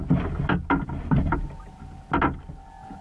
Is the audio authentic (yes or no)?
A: yes